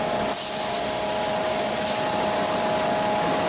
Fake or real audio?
real